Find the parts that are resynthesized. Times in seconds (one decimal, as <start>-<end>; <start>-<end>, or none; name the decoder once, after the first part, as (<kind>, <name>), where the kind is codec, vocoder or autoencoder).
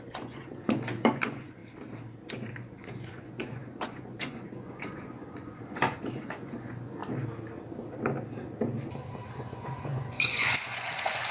0.0-1.6 (vocoder, Vocos); 2.3-7.0; 9.3-11.3